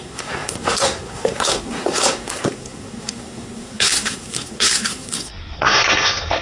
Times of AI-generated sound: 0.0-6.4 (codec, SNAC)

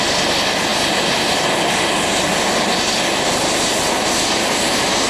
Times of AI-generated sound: none

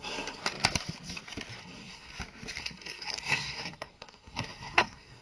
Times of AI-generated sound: 0.0-0.4 (codec, SNAC); 1.6-2.1; 2.6-5.2

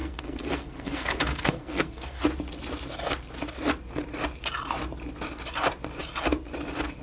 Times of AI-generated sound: 0.0-2.2 (codec, SNAC)